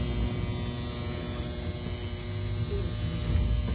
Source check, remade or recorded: recorded